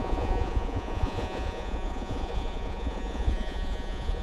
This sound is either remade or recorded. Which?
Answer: remade